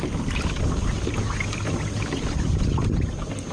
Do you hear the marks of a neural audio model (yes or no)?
no